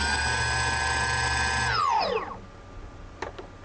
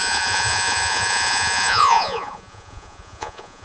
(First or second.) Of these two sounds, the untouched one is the first